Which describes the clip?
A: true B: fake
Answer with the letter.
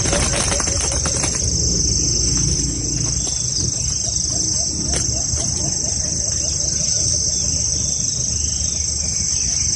A